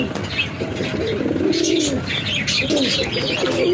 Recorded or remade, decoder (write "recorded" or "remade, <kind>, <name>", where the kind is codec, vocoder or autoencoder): recorded